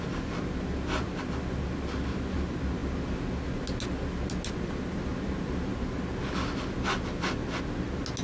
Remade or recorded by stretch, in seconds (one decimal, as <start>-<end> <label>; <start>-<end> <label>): 0.0-8.2 recorded